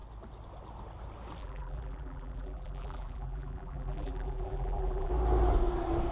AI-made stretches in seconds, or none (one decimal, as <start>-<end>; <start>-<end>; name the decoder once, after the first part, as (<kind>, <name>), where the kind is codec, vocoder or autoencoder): 1.4-5.1 (vocoder, BigVGAN v2)